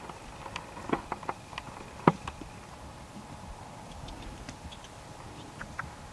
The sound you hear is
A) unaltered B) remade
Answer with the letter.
A